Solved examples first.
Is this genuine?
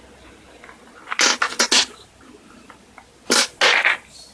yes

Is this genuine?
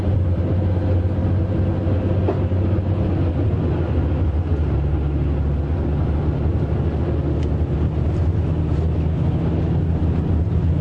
yes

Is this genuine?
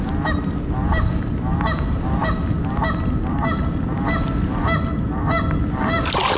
yes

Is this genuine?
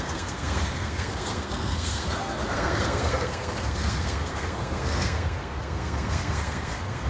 no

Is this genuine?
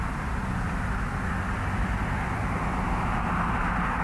yes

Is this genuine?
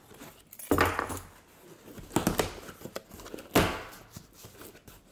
yes